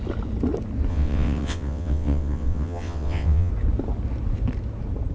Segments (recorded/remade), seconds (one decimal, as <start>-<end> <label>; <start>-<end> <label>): 0.0-0.9 recorded; 0.9-3.5 remade; 3.5-5.1 recorded